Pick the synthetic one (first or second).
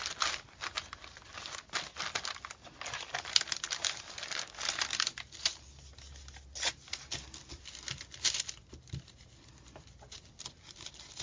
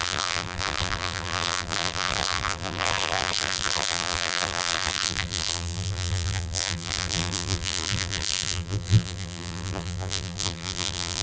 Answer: second